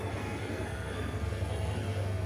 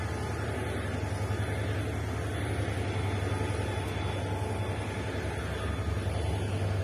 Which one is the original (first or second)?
second